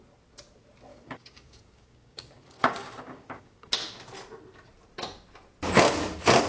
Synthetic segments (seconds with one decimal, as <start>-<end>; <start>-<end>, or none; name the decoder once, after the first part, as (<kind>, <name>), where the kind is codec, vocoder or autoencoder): 0.9-3.7 (codec, DAC)